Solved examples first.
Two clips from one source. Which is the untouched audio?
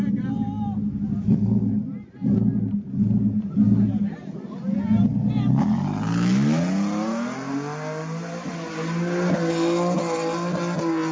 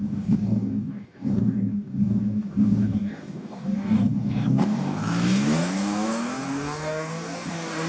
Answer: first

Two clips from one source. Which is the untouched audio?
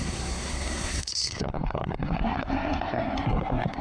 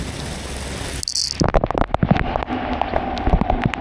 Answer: second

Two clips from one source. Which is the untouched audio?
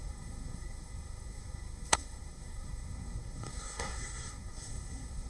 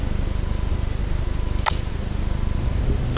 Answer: second